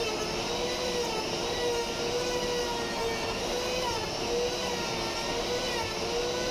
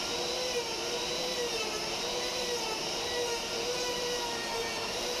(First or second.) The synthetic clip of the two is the second